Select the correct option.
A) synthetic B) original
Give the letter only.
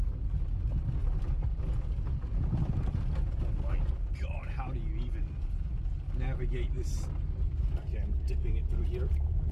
B